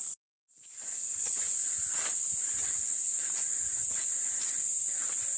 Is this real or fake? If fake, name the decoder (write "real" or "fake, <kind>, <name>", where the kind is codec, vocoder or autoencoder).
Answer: real